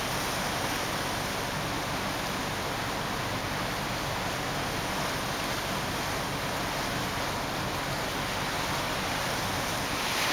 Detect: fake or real real